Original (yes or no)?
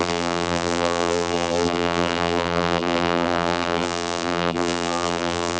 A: no